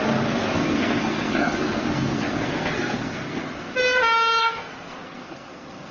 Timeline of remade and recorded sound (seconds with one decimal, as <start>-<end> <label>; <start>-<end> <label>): 0.0-0.4 recorded; 0.4-3.8 remade; 3.8-4.4 recorded; 4.4-5.9 remade